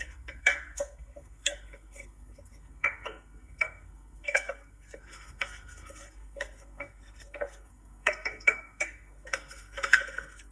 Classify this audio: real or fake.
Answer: fake